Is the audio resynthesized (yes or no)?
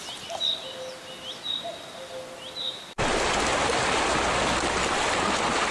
no